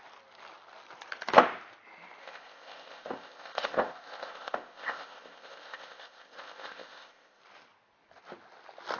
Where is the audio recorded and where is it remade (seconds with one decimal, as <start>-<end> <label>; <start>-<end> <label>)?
0.0-2.2 recorded; 2.2-7.4 remade; 7.4-9.0 recorded